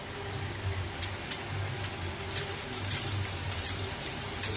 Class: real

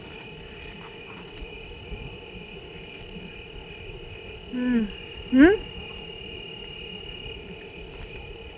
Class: real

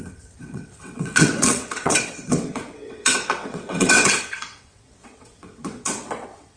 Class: fake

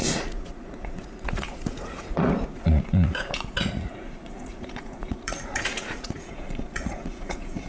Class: fake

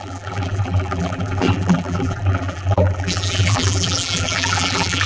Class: fake